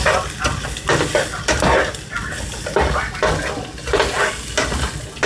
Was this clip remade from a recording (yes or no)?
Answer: no